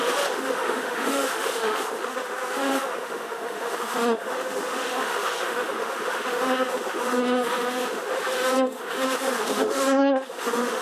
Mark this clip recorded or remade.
remade